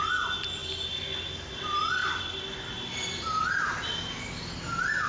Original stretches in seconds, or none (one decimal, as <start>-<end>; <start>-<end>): 0.0-5.1